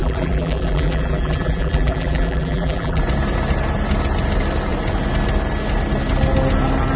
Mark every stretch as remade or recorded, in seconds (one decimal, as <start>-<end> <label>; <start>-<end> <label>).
0.0-3.0 remade; 3.0-7.0 recorded